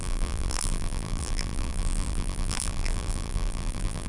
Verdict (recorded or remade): remade